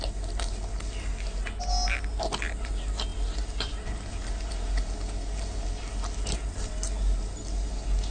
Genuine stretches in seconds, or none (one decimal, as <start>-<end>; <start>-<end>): 0.0-8.1